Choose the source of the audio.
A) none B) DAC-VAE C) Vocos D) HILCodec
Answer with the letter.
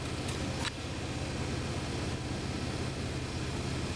A